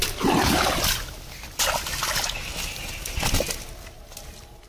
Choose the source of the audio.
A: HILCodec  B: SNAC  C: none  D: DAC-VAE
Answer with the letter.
C